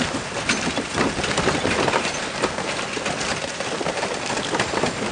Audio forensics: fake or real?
real